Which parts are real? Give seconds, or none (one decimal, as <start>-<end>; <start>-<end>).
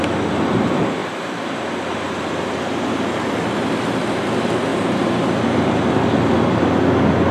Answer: 0.0-1.0; 2.6-4.7; 5.7-7.3